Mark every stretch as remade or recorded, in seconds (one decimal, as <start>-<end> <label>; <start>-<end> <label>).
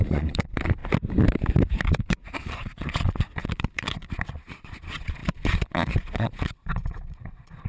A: 0.0-0.8 remade; 0.8-1.9 recorded; 1.9-7.7 remade